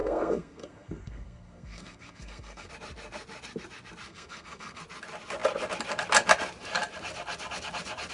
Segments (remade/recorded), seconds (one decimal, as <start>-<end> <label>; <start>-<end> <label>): 0.0-2.7 remade; 2.7-4.1 recorded; 4.1-4.8 remade; 4.8-8.1 recorded

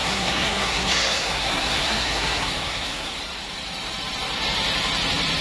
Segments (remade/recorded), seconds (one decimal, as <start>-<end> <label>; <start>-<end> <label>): 0.0-3.2 remade; 3.2-5.4 recorded

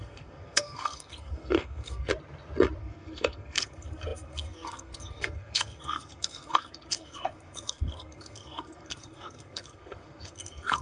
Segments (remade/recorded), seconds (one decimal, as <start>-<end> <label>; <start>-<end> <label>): 0.0-2.1 remade; 2.1-2.8 recorded; 2.8-10.8 remade